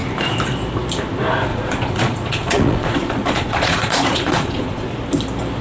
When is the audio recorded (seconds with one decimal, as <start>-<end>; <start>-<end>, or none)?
0.0-1.5; 4.9-5.6